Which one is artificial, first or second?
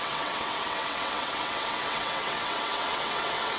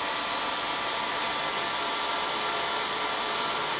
first